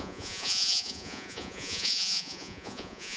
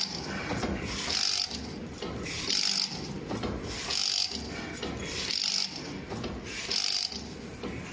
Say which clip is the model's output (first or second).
first